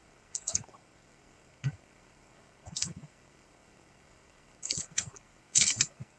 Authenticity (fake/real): fake